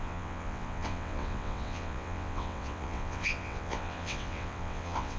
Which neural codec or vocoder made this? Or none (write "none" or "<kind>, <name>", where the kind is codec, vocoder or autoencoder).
vocoder, WaveNeXt